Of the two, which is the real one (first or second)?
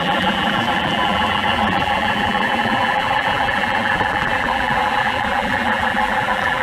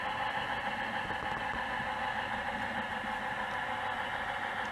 second